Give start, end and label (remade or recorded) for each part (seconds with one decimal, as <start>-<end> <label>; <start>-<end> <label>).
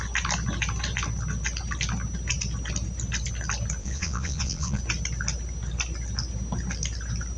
0.0-3.8 recorded; 3.8-4.8 remade; 4.8-7.4 recorded